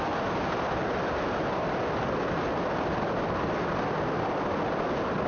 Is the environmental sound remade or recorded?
recorded